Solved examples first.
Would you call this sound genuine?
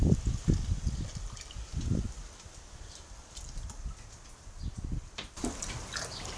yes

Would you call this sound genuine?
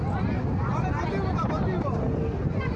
yes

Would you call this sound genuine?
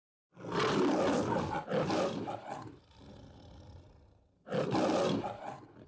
yes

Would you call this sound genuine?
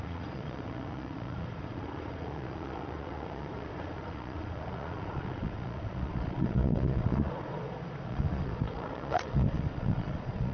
no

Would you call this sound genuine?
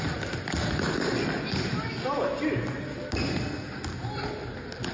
yes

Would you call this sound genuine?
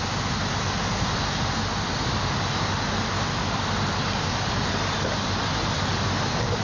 yes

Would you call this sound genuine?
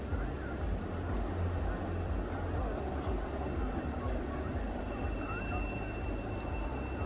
yes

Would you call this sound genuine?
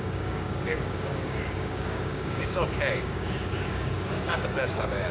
no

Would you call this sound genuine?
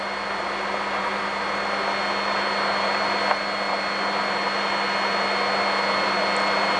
yes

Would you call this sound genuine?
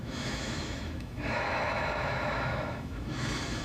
no